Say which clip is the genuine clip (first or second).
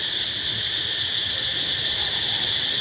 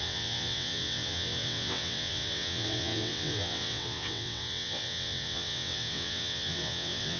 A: first